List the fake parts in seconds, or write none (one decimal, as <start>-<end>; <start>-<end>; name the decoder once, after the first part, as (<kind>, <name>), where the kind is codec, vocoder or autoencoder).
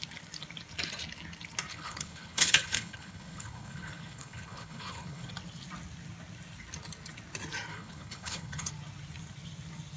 1.7-5.3 (codec, HILCodec); 7.7-8.7